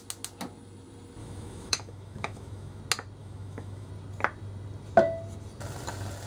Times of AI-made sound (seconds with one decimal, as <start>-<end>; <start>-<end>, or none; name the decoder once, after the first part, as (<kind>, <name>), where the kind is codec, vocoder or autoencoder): 1.2-2.8 (autoencoder, DAC-VAE); 3.2-3.9

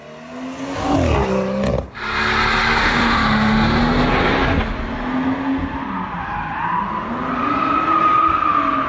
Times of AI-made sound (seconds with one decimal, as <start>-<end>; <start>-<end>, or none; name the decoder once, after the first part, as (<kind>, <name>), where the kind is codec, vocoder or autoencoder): 2.8-3.8 (autoencoder, DAC-VAE)

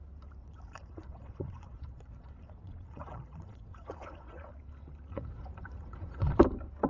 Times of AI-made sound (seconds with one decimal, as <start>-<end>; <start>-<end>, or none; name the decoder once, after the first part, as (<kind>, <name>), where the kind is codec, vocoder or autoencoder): 0.4-4.5 (vocoder, Vocos); 5.1-6.4